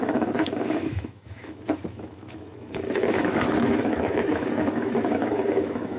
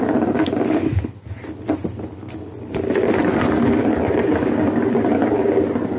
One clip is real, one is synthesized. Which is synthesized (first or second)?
first